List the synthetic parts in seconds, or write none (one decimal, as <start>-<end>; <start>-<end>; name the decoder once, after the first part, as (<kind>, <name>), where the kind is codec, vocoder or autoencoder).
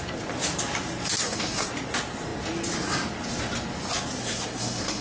1.2-1.7 (codec, SNAC); 4.2-5.0